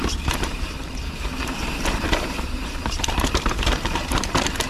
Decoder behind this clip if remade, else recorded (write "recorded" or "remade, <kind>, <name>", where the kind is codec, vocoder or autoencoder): remade, vocoder, BigVGAN v2